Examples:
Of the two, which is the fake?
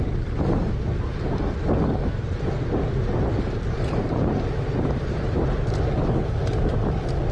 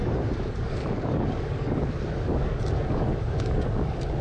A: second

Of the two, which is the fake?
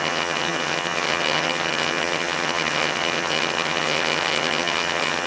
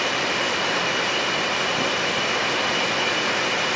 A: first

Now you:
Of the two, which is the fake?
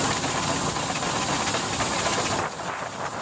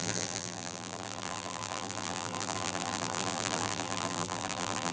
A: second